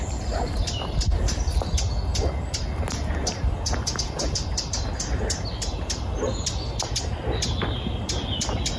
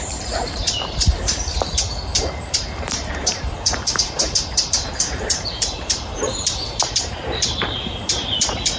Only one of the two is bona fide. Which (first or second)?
first